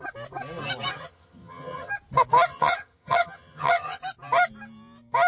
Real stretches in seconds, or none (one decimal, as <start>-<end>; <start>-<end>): 0.0-0.9; 1.9-2.5; 4.0-5.3

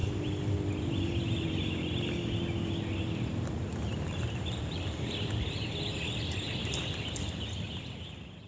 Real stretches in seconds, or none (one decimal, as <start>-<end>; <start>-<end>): 1.5-3.9; 8.1-8.5

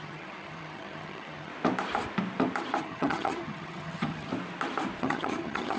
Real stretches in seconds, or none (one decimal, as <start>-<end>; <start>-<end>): 1.5-2.8; 4.3-5.0

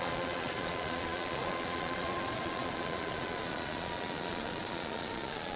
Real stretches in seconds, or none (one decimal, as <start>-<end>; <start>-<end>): none